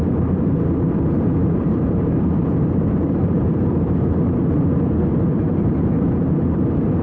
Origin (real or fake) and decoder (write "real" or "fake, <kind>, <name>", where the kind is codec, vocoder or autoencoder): fake, vocoder, BigVGAN v2